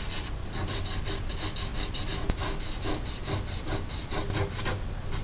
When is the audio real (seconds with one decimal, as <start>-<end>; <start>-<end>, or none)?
0.0-5.2